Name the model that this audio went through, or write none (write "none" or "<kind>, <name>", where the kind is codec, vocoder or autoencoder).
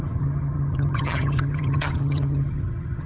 vocoder, HiFi-GAN